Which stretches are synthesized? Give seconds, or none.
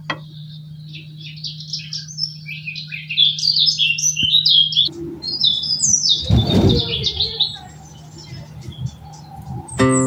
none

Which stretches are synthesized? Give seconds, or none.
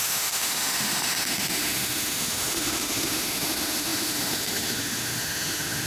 0.0-5.9 (autoencoder, DAC-VAE)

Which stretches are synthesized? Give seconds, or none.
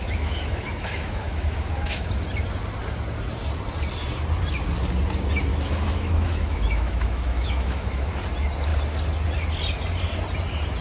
0.0-2.1 (autoencoder, DAC-VAE); 5.5-8.1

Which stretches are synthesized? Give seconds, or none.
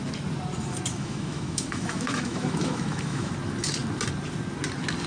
0.9-3.3 (autoencoder, DAC-VAE)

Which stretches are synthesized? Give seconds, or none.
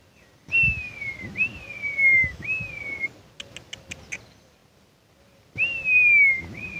2.0-2.7 (autoencoder, DAC-VAE)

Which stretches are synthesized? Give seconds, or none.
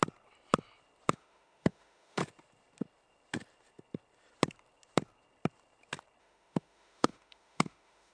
1.1-2.2 (autoencoder, DAC-VAE); 6.2-8.1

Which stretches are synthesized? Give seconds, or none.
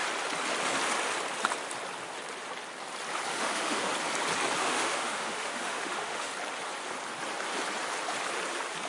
3.3-3.9 (autoencoder, DAC-VAE); 4.6-6.3